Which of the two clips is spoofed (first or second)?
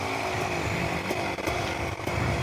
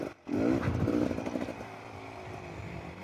first